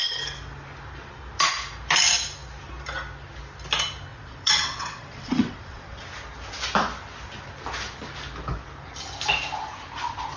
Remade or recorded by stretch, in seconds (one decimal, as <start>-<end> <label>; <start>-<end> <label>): 0.0-4.1 recorded; 4.1-6.0 remade; 6.0-10.4 recorded